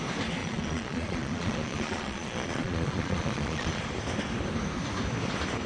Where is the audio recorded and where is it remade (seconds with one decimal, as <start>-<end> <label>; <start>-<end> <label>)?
0.0-0.4 recorded; 0.4-3.8 remade; 3.8-5.7 recorded